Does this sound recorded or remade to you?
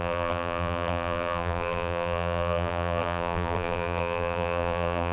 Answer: remade